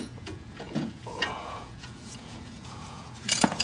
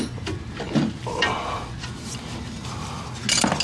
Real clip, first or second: second